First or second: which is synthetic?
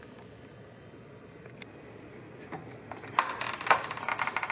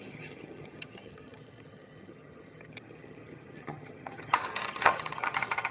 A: second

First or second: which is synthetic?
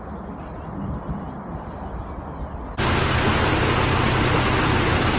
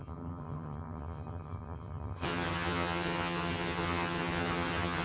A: second